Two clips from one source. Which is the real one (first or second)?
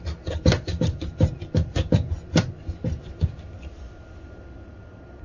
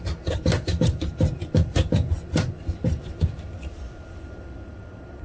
first